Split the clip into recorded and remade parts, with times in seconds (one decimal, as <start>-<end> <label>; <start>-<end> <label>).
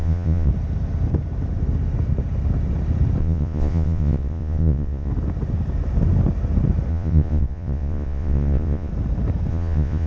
0.0-0.5 remade; 0.5-3.2 recorded; 3.2-5.1 remade; 5.1-6.9 recorded; 6.9-8.9 remade; 8.9-9.5 recorded; 9.5-10.1 remade